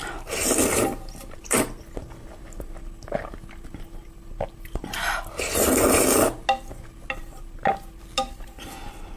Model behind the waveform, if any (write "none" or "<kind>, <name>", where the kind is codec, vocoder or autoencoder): none